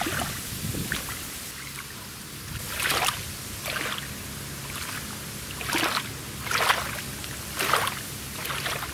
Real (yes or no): yes